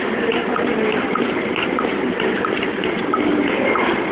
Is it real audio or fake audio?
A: real